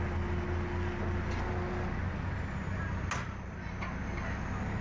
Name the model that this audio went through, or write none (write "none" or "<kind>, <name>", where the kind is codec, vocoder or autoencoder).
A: none